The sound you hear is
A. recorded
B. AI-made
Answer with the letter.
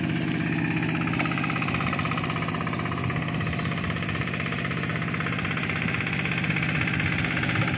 A